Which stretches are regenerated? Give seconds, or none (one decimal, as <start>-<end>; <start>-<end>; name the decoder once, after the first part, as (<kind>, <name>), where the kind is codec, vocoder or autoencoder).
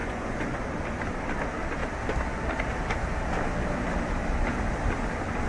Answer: 0.0-0.6 (vocoder, Vocos)